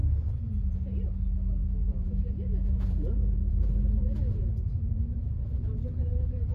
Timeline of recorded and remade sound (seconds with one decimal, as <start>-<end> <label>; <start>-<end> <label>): 0.0-1.9 recorded; 1.9-6.5 remade